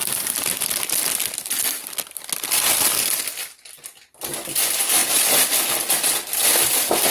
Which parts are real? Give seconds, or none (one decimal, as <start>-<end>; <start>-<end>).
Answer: 0.0-7.1